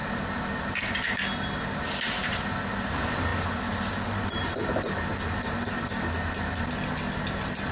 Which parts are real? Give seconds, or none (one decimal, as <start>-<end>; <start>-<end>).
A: 0.0-7.7